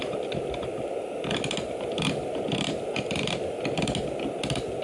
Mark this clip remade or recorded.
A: recorded